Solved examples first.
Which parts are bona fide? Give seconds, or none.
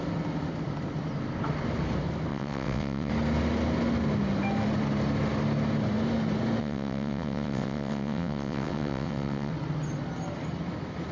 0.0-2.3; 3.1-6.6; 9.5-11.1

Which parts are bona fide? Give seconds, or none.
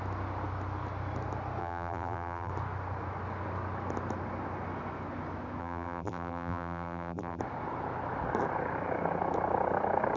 0.0-1.6; 2.5-5.6; 7.4-10.2